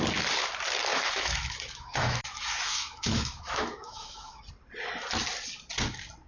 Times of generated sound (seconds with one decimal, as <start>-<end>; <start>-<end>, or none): 0.9-4.4